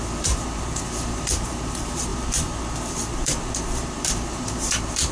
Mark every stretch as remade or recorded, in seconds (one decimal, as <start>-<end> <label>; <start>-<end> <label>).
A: 0.0-5.1 remade